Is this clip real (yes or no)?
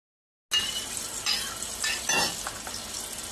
yes